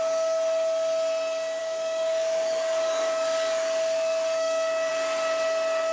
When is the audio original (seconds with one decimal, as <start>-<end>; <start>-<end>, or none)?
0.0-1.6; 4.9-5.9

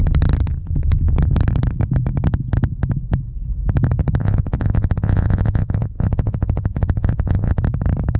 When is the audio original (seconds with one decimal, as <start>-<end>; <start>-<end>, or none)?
0.0-4.2; 7.6-8.2

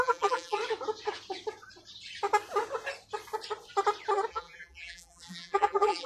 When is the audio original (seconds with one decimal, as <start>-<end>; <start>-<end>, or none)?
0.6-4.3

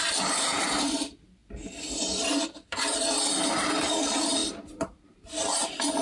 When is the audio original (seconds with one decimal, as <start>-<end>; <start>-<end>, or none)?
0.0-6.0